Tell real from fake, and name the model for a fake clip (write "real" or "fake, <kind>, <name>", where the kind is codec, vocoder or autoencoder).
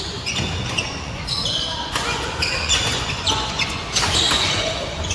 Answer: fake, vocoder, Vocos